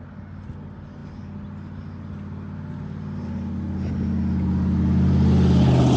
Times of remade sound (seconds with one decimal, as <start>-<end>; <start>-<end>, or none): none